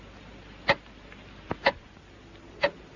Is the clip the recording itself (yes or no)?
yes